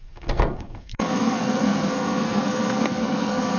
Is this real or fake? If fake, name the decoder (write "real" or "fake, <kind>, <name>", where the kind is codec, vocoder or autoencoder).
fake, codec, SNAC